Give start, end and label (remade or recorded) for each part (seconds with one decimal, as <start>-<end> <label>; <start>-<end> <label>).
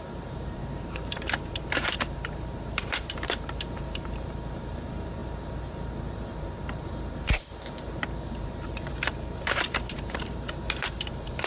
0.0-11.5 remade